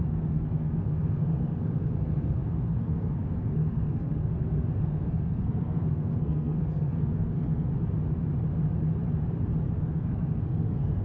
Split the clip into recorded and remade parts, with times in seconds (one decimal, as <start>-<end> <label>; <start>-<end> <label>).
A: 0.0-7.7 remade; 7.7-9.8 recorded; 9.8-11.0 remade